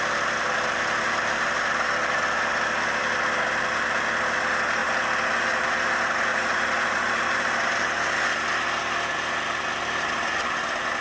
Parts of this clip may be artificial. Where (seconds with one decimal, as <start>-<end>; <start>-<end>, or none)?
6.3-7.2